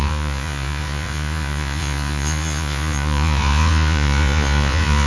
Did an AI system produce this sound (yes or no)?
yes